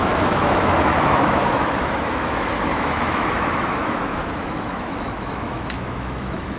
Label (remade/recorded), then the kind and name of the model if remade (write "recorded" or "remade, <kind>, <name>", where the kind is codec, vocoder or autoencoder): remade, autoencoder, DAC-VAE